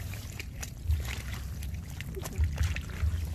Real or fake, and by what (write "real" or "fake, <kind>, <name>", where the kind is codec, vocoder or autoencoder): fake, vocoder, BigVGAN v2